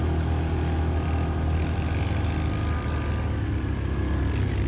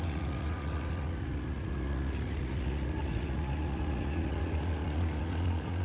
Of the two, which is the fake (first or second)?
second